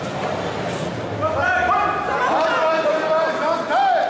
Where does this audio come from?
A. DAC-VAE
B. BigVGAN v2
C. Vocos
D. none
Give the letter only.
D